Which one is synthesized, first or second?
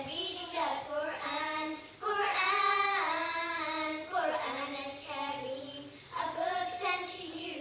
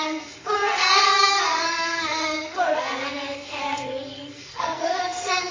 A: second